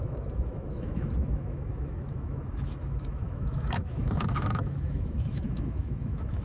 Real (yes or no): no